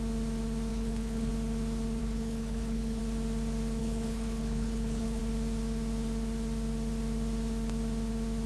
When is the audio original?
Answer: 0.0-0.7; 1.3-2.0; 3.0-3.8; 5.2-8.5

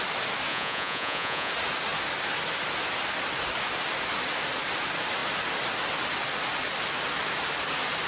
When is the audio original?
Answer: 0.0-0.5; 1.5-8.1

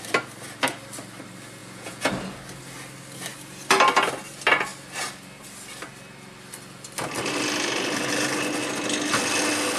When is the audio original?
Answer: 0.0-1.6; 2.1-9.8